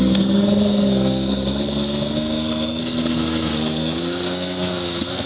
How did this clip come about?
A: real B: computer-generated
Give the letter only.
B